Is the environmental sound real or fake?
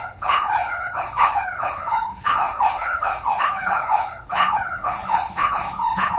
fake